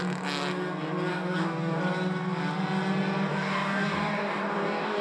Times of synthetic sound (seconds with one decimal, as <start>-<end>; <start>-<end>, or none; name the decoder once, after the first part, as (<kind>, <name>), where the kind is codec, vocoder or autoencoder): 1.1-1.8 (codec, DAC); 3.3-5.0